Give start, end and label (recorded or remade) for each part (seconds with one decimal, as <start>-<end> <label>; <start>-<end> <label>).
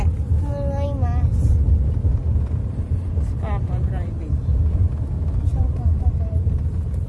0.0-2.1 recorded; 2.1-3.2 remade; 3.2-5.5 recorded; 5.5-7.1 remade